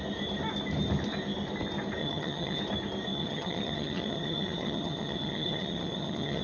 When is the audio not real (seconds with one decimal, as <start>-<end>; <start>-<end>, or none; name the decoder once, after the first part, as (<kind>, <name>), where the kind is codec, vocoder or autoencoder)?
2.0-2.6 (vocoder, HiFi-GAN); 3.1-6.4

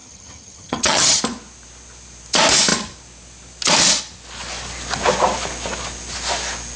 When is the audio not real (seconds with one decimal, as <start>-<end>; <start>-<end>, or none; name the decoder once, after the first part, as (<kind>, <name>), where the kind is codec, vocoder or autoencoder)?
0.0-1.2 (vocoder, HiFi-GAN)

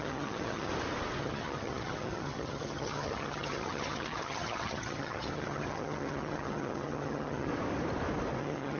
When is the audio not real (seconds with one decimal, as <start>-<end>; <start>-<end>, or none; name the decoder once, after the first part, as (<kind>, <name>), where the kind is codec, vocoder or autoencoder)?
0.0-0.7 (vocoder, HiFi-GAN); 1.2-7.5; 8.4-8.8